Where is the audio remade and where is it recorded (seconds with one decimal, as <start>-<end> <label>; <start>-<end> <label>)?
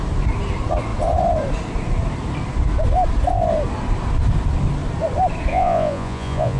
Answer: 0.0-5.5 recorded; 5.5-6.6 remade